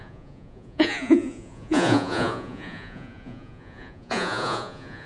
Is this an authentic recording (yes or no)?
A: no